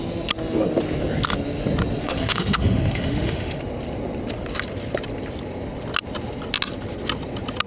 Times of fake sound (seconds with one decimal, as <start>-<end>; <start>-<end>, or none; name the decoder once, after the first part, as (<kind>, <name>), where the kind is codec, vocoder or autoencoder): 2.0-3.6 (autoencoder, DAC-VAE)